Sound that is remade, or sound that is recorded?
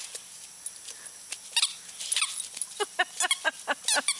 recorded